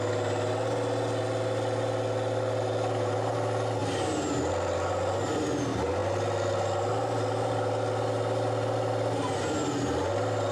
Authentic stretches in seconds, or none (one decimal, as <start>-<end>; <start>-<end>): 0.0-10.5